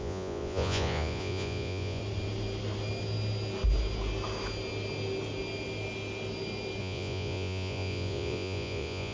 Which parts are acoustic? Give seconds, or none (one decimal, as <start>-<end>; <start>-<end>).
2.0-6.8